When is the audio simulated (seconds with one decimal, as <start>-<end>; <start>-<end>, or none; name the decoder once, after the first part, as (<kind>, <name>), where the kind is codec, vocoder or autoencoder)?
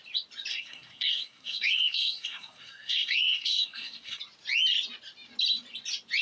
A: 0.5-4.2 (codec, SNAC)